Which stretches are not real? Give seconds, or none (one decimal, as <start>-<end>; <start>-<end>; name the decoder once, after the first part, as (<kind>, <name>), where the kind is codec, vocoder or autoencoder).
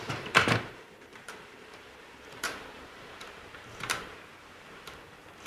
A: 0.0-5.5 (vocoder, BigVGAN v2)